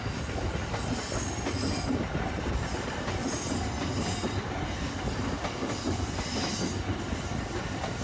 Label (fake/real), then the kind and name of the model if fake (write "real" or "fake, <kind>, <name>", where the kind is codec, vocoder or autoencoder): real